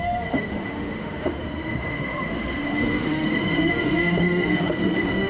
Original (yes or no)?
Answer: no